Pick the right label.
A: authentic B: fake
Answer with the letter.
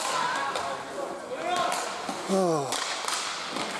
A